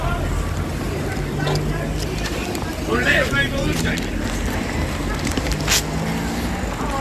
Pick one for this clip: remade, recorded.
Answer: recorded